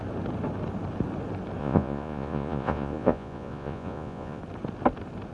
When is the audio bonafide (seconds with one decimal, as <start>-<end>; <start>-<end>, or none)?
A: 0.0-1.6; 4.4-5.3